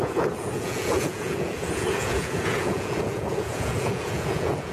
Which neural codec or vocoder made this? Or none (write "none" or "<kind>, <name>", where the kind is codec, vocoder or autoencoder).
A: vocoder, Vocos